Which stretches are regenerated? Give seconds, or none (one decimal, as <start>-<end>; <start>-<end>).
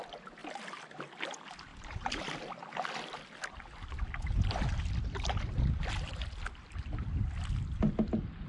0.4-1.0; 1.7-5.4